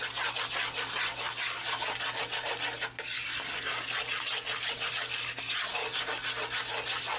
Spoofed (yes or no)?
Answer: no